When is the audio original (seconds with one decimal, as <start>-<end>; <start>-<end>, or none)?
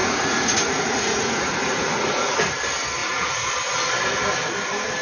2.5-3.0; 3.5-5.0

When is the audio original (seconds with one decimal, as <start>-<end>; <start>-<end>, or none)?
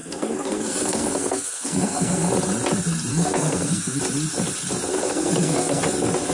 2.3-3.1; 4.0-4.9; 5.8-6.3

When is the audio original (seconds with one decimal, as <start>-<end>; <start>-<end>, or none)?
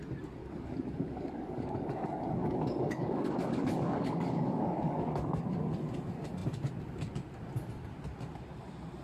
0.0-0.4; 5.4-9.0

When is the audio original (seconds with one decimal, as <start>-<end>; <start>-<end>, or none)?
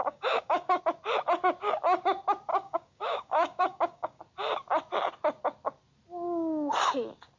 0.8-2.5; 4.2-7.4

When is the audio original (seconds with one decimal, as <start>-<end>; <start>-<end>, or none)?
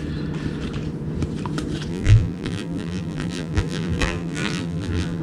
0.0-1.9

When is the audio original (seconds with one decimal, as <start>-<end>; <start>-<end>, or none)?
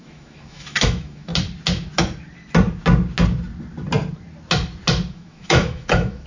1.3-5.1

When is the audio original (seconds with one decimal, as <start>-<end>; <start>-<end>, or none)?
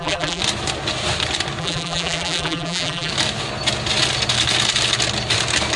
0.4-1.6; 3.1-5.8